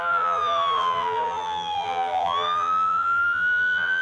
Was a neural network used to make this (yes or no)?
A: yes